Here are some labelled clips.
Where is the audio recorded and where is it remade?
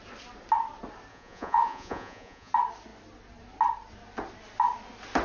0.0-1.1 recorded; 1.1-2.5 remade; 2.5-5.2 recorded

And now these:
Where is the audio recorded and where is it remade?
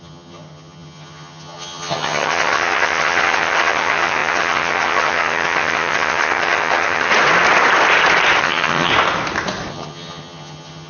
0.0-7.1 remade; 7.1-8.4 recorded; 8.4-8.9 remade; 8.9-9.7 recorded; 9.7-10.9 remade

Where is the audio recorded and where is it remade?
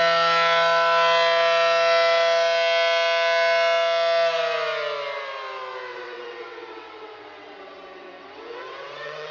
0.0-5.9 recorded; 5.9-9.3 remade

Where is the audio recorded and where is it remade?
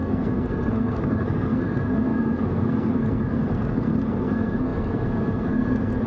0.0-6.1 remade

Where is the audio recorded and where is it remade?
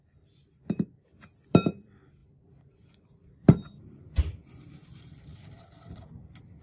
0.0-6.6 remade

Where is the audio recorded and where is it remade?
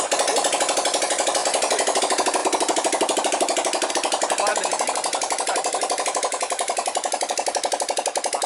0.0-4.5 recorded; 4.5-7.3 remade; 7.3-8.5 recorded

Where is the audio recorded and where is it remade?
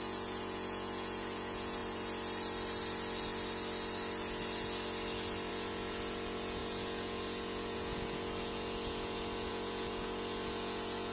0.0-1.8 remade; 1.8-5.5 recorded; 5.5-11.1 remade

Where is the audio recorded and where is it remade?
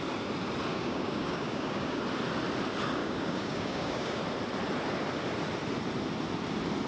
0.0-0.7 recorded; 0.7-2.0 remade; 2.0-3.0 recorded; 3.0-4.2 remade; 4.2-6.9 recorded